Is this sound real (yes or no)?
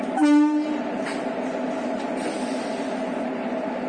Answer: yes